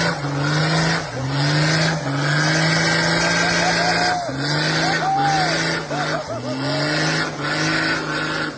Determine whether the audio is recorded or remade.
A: recorded